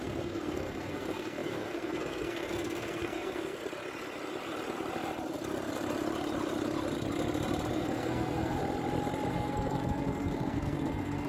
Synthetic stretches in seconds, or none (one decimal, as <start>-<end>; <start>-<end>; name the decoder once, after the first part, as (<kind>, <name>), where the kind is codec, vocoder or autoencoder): 0.0-3.6 (codec, SNAC); 7.7-8.6; 9.3-11.3